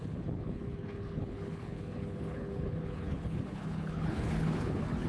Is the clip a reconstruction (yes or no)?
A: yes